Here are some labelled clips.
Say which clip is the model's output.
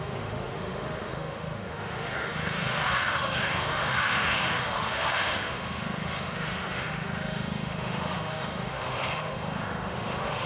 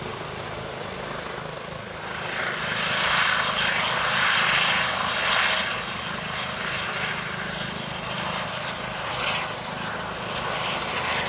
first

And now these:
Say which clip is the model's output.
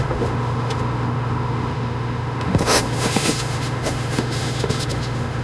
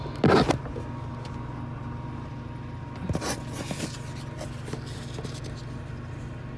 first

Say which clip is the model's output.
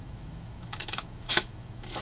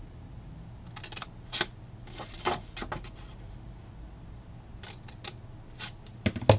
first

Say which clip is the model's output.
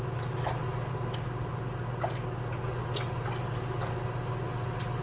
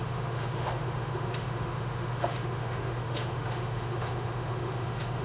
second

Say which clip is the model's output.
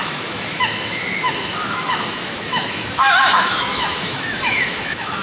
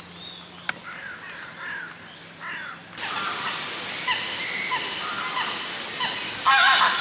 first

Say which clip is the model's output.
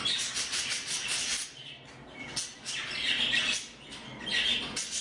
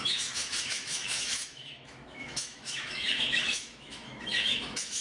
second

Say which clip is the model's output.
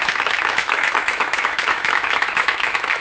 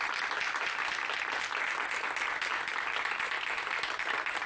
first